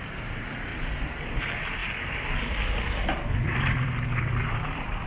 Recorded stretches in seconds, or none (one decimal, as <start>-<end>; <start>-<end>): 0.0-0.7; 1.4-1.8